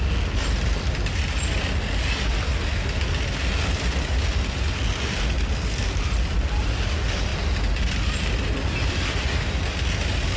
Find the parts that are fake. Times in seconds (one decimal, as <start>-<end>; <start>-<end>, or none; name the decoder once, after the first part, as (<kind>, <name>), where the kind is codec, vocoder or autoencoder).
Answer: none